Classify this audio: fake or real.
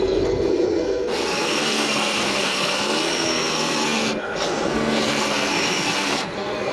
fake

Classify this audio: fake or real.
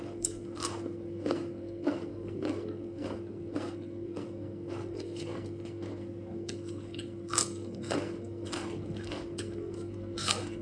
fake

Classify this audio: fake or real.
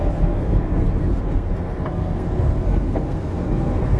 fake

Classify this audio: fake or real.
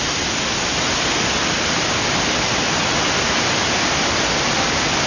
real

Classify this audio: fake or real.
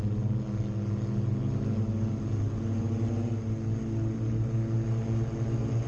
real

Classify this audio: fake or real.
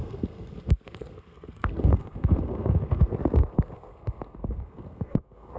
fake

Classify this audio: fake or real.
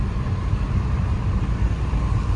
real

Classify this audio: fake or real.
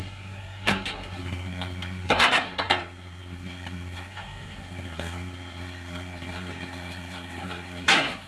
fake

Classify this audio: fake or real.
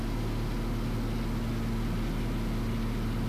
real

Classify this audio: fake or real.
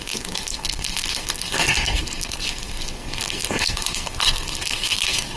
fake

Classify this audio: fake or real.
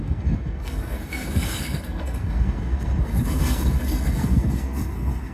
fake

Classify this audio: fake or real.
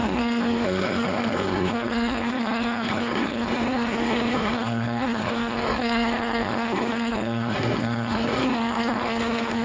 fake